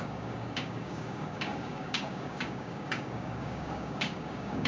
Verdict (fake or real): fake